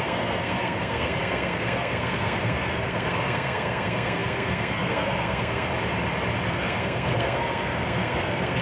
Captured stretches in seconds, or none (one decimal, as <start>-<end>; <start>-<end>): 5.7-6.5